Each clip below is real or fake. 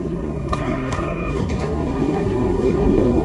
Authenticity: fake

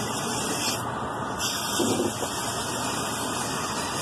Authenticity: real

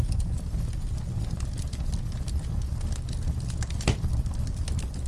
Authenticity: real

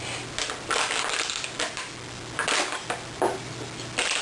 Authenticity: real